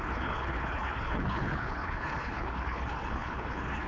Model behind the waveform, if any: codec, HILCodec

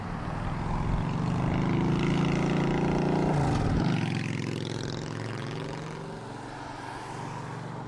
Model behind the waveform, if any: none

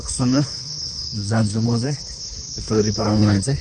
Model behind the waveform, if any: codec, HILCodec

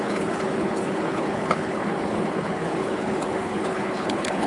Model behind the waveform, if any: codec, HILCodec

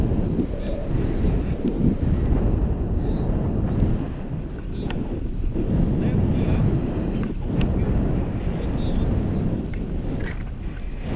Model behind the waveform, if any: none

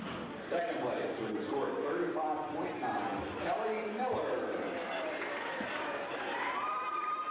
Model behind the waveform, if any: none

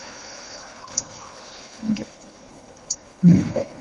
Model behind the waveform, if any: codec, HILCodec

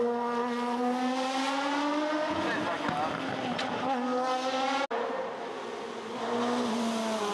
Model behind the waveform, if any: none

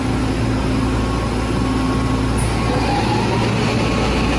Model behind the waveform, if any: none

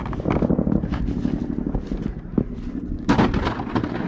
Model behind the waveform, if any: none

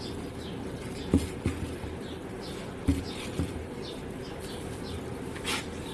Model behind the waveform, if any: none